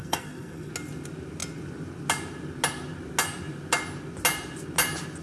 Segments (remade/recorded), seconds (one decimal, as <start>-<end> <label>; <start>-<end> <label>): 0.0-0.7 remade; 0.7-5.2 recorded